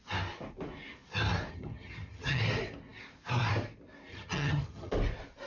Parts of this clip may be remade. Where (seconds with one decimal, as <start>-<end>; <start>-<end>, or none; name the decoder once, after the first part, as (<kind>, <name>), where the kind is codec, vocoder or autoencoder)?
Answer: 1.5-2.4 (vocoder, HiFi-GAN); 4.1-4.9